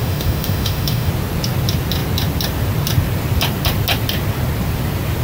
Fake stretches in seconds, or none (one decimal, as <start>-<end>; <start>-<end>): 0.0-1.1